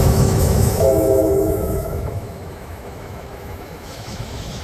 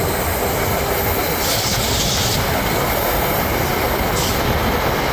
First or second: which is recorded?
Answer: second